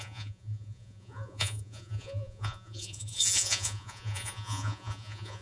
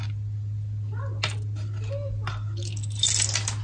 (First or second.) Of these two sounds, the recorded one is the second